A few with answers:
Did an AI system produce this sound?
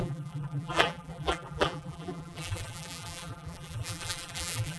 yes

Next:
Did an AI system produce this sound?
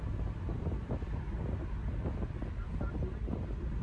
no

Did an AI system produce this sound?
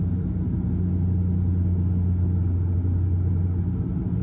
no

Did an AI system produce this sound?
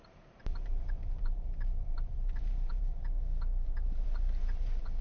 yes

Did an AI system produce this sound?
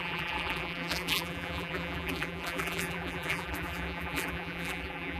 yes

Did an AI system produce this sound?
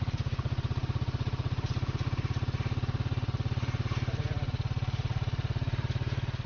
yes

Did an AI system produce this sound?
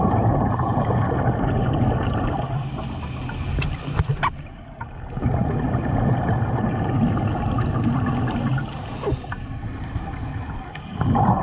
no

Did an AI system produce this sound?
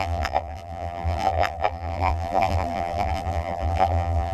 yes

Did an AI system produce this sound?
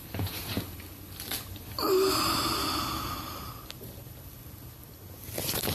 no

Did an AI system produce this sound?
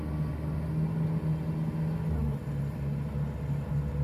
no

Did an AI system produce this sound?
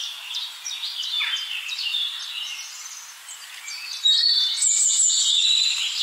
yes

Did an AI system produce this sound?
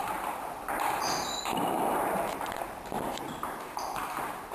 yes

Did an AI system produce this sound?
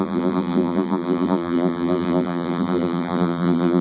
yes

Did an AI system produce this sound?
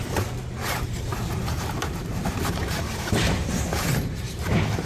yes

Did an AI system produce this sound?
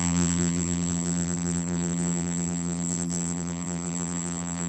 yes